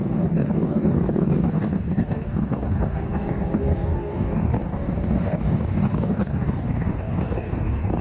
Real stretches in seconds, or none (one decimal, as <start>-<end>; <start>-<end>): none